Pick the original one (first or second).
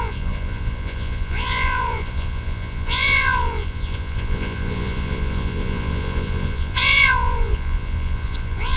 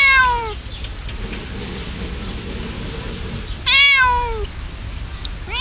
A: second